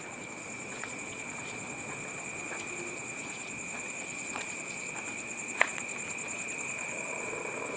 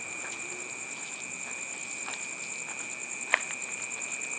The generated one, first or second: first